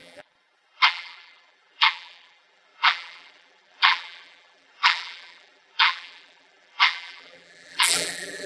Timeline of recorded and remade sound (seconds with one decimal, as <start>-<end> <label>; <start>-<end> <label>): 0.0-8.5 remade